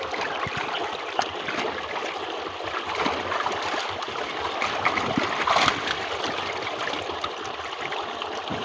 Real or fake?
real